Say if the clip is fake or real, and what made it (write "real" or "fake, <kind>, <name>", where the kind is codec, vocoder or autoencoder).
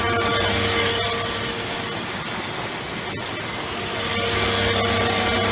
real